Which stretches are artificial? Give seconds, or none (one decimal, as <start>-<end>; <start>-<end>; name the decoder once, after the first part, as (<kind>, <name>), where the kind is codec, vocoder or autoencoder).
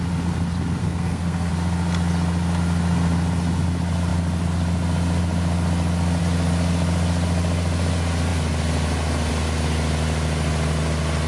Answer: 0.8-1.5 (codec, SNAC)